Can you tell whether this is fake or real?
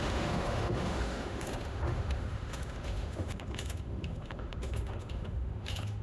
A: fake